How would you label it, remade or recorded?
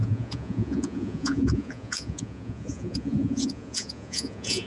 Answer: remade